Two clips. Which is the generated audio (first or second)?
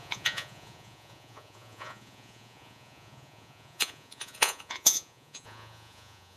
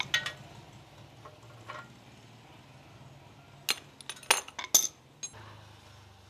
first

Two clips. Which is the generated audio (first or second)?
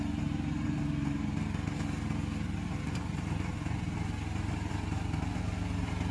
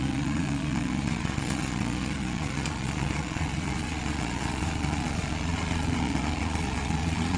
second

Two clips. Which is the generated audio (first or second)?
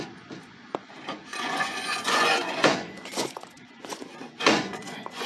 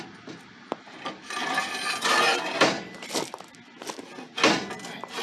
first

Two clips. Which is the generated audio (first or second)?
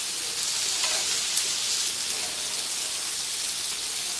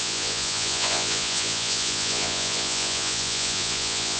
second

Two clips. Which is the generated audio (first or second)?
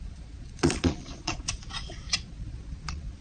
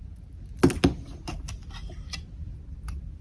first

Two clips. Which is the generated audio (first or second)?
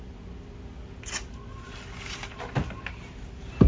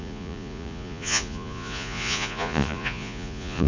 second